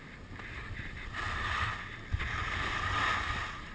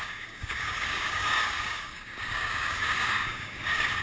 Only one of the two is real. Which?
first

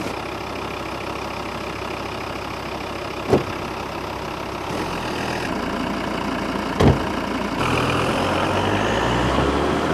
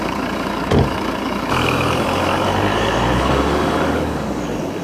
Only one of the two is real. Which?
first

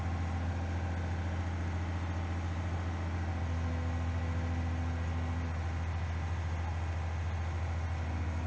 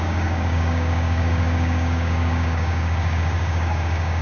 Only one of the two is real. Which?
first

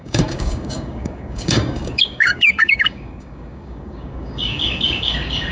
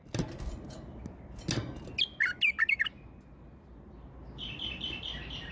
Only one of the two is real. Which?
second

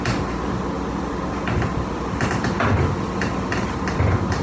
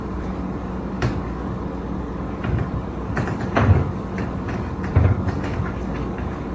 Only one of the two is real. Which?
first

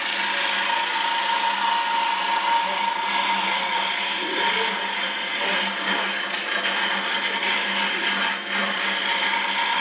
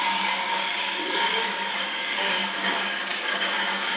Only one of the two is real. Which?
first